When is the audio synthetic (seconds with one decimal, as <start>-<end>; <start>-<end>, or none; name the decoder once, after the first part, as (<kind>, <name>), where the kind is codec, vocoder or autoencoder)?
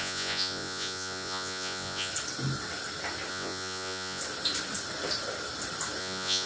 0.0-2.1 (vocoder, Vocos); 3.3-4.2; 6.0-6.5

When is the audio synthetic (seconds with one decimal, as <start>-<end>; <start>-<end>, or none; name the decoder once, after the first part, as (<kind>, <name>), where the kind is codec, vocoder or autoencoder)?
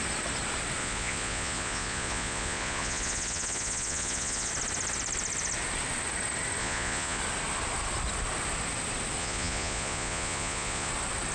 0.8-4.5 (vocoder, Vocos); 6.6-7.2; 9.2-10.9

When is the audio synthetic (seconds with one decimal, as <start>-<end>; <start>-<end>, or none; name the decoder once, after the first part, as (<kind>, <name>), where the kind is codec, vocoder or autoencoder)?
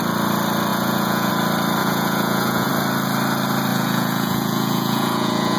0.7-1.3 (vocoder, Vocos); 1.8-2.7; 3.7-5.6